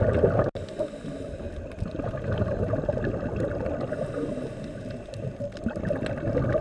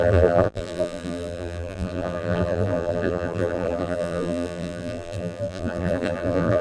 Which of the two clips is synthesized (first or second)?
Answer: second